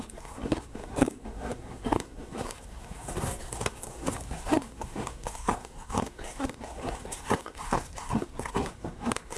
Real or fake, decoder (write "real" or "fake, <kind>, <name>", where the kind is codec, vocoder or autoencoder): fake, codec, SNAC